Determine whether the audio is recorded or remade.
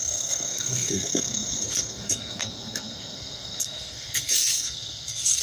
remade